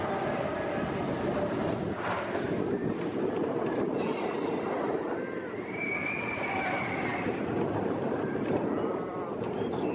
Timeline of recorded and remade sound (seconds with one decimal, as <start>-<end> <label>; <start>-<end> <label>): 0.0-9.9 recorded